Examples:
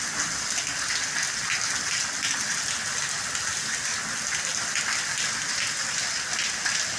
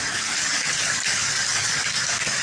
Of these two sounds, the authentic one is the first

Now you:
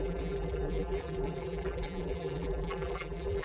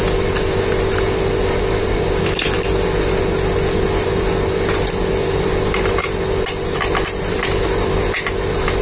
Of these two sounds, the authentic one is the second